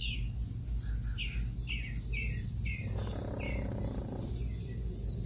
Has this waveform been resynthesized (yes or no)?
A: no